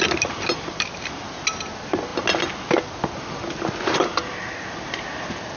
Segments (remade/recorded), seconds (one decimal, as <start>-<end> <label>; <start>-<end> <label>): 0.0-5.6 recorded